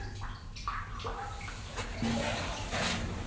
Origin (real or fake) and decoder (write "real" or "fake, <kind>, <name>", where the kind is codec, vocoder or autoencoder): real